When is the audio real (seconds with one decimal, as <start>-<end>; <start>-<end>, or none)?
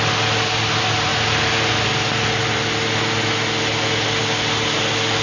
0.0-5.2